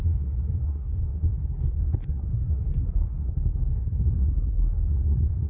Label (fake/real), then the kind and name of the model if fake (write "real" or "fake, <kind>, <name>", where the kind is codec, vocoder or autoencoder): fake, codec, SNAC